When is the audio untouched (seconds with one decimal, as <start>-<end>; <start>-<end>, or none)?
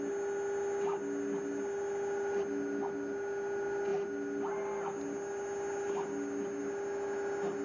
0.0-7.6